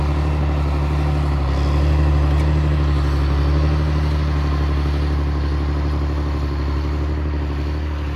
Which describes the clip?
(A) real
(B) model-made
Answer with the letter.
A